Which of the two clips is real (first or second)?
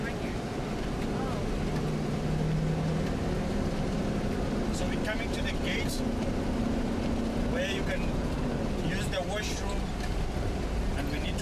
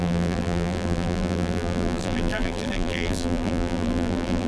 first